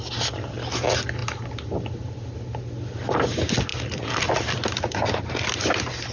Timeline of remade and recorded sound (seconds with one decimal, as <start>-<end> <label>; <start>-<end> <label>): 0.0-3.7 recorded; 3.7-4.8 remade; 4.8-6.1 recorded